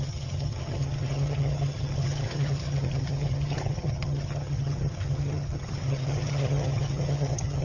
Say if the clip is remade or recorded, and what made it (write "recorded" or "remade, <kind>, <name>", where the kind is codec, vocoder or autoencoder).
remade, vocoder, HiFi-GAN